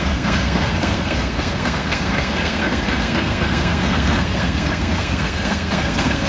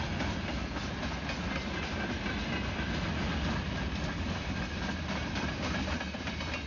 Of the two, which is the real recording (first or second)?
second